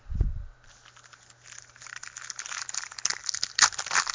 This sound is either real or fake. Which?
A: real